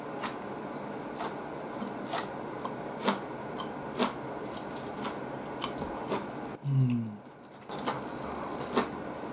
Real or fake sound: real